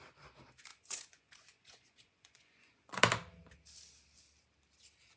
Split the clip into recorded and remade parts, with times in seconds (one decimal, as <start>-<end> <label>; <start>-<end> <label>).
0.0-0.7 recorded; 0.7-3.0 remade; 3.0-5.2 recorded

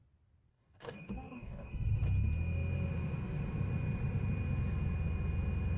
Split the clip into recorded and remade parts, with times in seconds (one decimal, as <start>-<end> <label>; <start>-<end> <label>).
0.0-0.5 recorded; 0.5-1.7 remade; 1.7-5.8 recorded

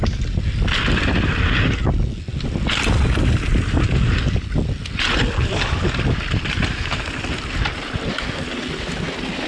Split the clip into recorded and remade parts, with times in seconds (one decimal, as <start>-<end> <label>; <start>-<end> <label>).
0.0-9.5 recorded

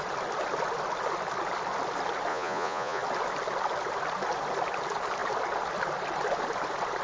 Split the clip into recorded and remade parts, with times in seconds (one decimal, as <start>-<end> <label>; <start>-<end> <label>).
0.0-2.3 recorded; 2.3-3.0 remade; 3.0-7.0 recorded

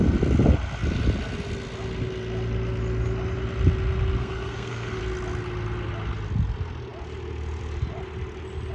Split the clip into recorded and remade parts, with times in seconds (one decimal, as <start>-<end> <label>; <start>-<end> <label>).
0.0-4.2 recorded; 4.2-5.0 remade; 5.0-8.7 recorded

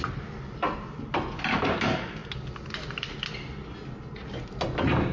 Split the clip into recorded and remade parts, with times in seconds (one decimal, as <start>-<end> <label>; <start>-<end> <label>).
0.0-5.1 recorded